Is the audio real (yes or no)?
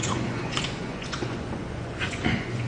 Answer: no